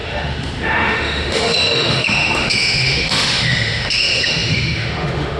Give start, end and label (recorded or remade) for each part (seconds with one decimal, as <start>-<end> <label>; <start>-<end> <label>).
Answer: 0.0-5.4 remade